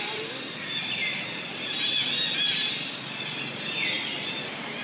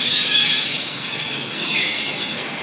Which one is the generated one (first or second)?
second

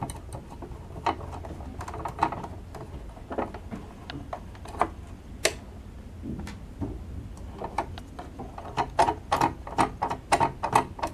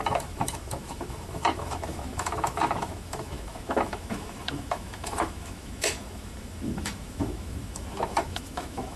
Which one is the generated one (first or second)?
second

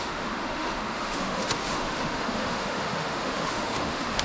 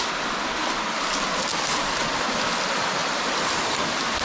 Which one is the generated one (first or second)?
first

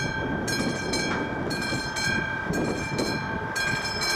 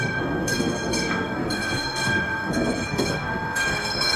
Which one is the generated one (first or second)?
second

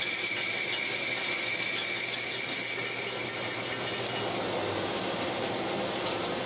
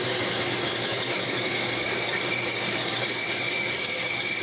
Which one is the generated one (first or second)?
second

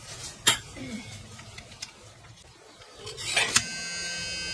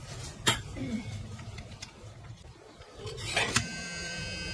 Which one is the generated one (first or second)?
second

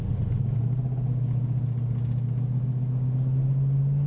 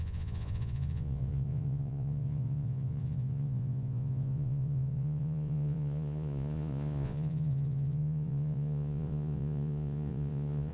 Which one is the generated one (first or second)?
second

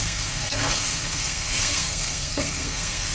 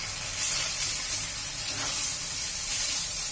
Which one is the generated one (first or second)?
first